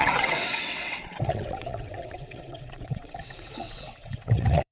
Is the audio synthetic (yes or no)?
yes